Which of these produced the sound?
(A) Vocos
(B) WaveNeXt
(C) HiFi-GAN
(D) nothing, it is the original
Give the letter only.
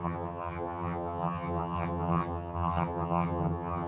C